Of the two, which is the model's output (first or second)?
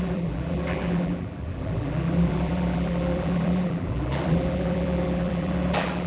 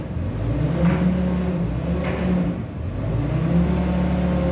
first